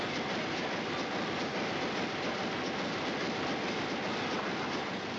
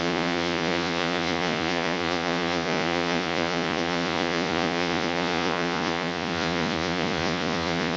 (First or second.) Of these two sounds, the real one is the first